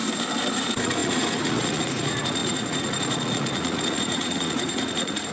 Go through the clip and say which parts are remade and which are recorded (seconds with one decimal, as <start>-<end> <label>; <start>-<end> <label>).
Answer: 0.0-0.5 recorded; 0.5-5.3 remade